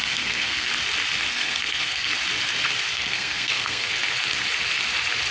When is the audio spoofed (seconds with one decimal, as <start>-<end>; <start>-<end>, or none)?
0.0-0.7; 1.3-2.1; 2.9-3.9